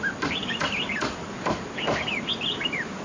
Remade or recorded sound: remade